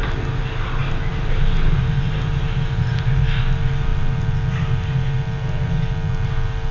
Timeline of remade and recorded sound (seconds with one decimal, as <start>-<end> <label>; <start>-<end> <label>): 0.0-6.7 recorded